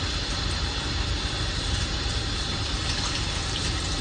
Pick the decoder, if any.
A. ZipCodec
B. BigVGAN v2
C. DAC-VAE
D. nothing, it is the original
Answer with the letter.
B